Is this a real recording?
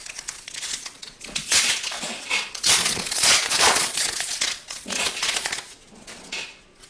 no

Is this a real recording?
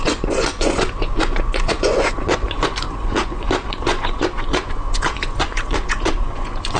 no